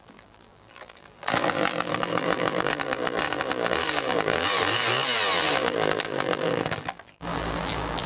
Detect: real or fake fake